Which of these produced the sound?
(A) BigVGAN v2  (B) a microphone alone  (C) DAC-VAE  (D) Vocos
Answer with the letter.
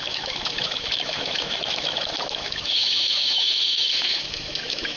C